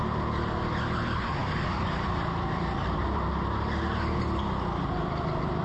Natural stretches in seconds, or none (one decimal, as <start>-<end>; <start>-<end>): 0.0-5.6